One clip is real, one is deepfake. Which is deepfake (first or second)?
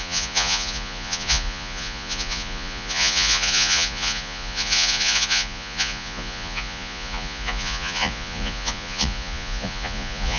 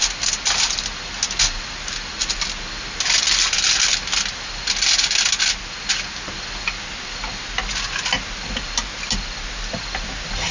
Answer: first